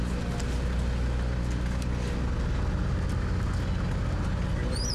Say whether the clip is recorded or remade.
recorded